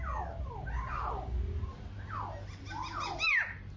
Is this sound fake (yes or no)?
no